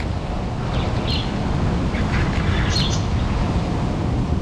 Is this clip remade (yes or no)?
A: no